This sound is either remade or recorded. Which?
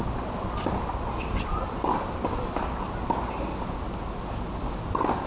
recorded